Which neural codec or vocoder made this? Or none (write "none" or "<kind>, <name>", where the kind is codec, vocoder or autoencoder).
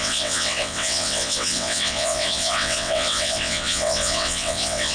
vocoder, WaveNeXt